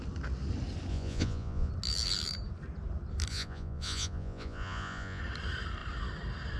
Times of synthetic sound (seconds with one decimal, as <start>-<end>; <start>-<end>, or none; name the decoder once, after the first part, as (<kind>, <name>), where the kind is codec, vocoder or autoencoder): 0.9-1.7 (vocoder, Vocos); 3.3-5.2